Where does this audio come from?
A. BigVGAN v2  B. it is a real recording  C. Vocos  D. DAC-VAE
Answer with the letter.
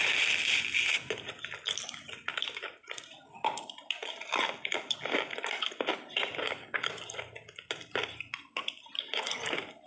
B